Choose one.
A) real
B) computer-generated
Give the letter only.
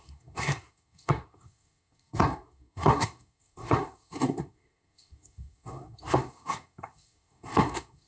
B